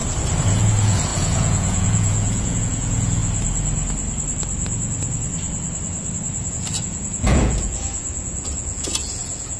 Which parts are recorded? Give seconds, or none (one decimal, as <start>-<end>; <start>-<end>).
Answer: 0.0-0.6; 3.2-6.5